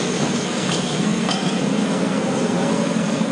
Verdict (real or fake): fake